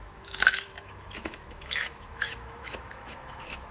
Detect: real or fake fake